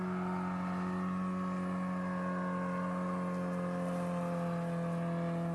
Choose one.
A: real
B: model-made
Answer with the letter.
A